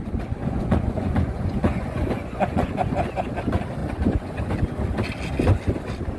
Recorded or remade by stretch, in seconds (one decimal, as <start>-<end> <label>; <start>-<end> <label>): 0.0-0.4 recorded; 0.4-3.3 remade; 3.3-3.8 recorded; 3.8-4.5 remade; 4.5-6.2 recorded

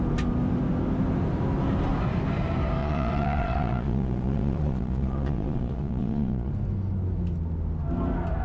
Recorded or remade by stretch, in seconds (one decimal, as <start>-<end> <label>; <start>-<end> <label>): 0.0-2.8 recorded; 2.8-6.5 remade; 6.5-8.4 recorded